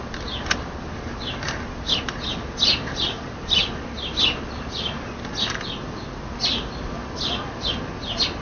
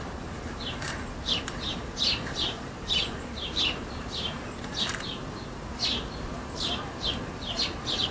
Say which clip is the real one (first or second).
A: first